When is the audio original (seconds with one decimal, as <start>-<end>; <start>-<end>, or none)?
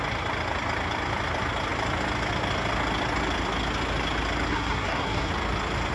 0.0-4.5; 5.3-5.9